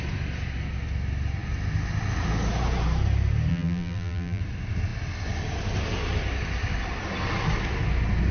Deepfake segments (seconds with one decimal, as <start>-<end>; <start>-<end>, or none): 3.5-4.4